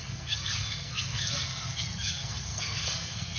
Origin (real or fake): fake